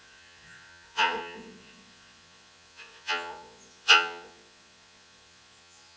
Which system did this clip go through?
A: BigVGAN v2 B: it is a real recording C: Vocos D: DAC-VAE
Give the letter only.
C